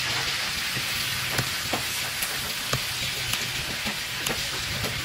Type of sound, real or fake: real